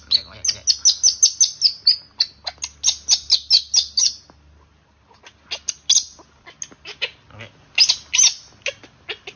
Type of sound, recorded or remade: recorded